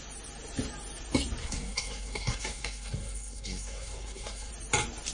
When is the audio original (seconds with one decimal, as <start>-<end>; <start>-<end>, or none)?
0.0-1.4; 4.5-5.1